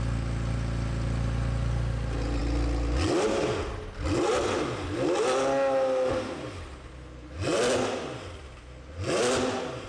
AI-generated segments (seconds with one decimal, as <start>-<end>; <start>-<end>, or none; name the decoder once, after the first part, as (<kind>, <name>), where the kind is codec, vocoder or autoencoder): none